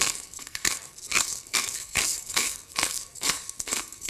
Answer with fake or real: fake